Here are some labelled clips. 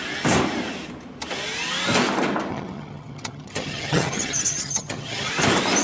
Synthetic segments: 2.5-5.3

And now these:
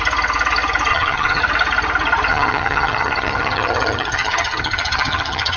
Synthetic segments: 0.9-1.4; 2.3-5.6